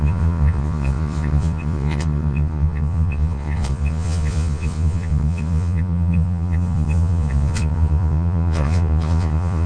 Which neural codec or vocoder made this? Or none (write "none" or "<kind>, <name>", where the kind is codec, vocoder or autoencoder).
vocoder, Vocos